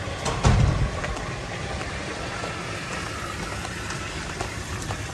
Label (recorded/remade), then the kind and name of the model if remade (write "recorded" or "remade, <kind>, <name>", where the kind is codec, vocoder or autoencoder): recorded